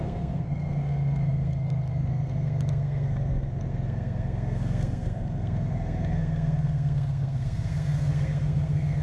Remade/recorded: remade